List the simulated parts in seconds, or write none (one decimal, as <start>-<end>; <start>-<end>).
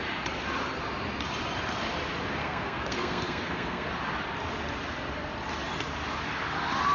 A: 2.4-3.9